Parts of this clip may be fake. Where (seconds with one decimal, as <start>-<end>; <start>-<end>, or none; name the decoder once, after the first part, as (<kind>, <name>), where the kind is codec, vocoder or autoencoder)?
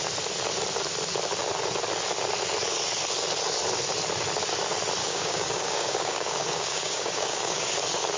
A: 5.0-7.7 (codec, DAC)